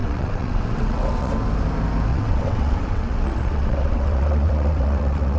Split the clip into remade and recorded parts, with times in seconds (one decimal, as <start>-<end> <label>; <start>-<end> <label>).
0.0-1.3 remade; 1.3-2.1 recorded; 2.1-5.4 remade